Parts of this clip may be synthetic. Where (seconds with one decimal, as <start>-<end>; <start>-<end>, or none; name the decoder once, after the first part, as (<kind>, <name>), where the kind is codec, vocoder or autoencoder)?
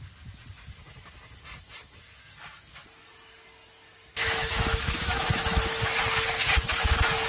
4.2-5.6 (autoencoder, DAC-VAE)